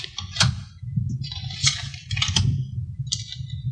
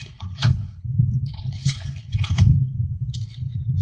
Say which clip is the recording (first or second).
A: first